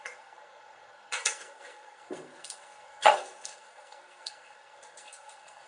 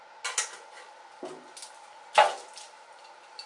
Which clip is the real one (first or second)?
second